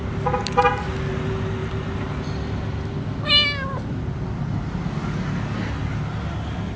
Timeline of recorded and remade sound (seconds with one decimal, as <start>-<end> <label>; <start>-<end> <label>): 0.0-6.8 recorded